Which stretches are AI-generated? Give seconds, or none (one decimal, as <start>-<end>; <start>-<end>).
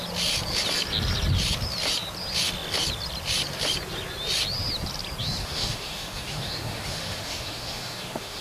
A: 5.4-8.4